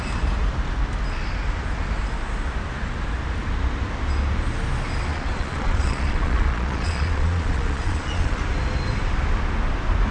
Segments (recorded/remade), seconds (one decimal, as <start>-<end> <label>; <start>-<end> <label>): 0.0-5.1 recorded; 5.1-8.4 remade; 8.4-10.1 recorded